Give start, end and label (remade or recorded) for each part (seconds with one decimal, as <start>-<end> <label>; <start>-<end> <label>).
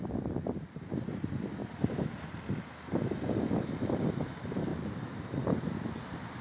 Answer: 0.0-6.4 recorded